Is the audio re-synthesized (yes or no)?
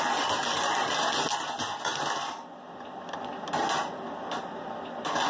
no